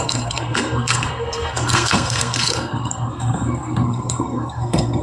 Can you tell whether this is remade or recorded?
remade